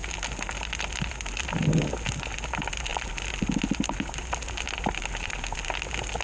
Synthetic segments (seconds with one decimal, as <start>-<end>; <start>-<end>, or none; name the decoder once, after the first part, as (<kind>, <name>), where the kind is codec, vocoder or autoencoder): none